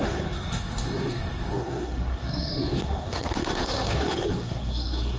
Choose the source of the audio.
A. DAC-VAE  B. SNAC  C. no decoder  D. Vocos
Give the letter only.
B